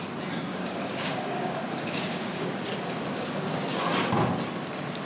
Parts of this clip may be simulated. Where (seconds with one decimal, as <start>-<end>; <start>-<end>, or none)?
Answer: 0.5-2.6